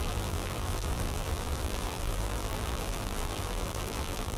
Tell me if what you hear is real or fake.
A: fake